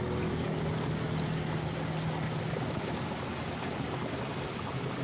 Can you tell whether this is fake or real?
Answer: real